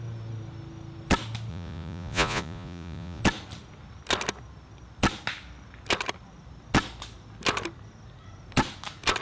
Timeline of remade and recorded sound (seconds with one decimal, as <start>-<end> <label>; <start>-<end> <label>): 0.0-1.5 recorded; 1.5-3.2 remade; 3.2-9.2 recorded